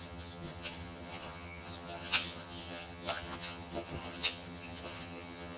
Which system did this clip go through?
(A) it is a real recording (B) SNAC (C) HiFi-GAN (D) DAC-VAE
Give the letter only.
C